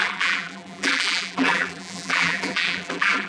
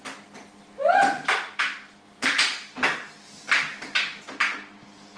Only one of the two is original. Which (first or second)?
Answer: second